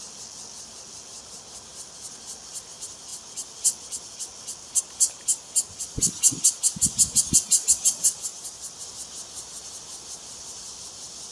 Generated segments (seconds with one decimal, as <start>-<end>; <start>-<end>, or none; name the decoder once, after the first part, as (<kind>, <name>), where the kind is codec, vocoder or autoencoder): 8.3-8.8 (vocoder, BigVGAN v2)